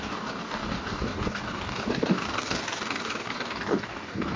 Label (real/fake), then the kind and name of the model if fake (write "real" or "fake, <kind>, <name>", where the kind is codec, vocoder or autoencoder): fake, codec, DAC